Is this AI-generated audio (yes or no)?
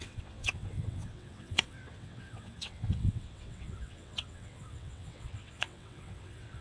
yes